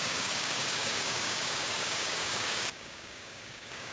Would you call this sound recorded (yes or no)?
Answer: no